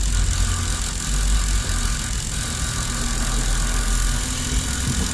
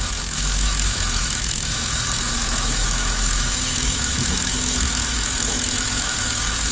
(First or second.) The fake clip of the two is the second